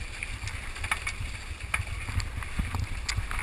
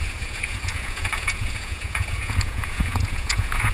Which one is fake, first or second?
second